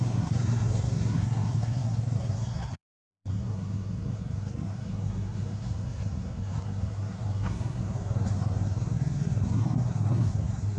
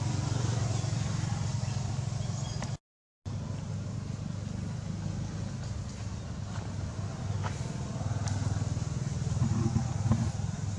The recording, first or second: second